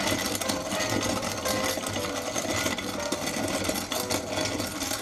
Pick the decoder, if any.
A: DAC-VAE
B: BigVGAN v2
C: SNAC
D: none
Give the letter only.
D